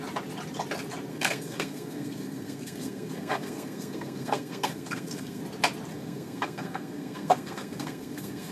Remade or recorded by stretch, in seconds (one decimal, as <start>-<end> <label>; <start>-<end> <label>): 0.0-1.1 recorded; 1.1-5.4 remade; 5.4-5.9 recorded; 5.9-8.5 remade